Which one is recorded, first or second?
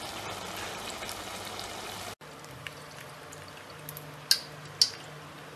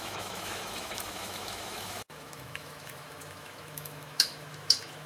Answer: first